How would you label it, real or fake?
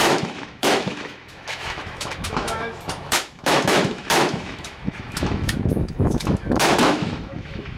fake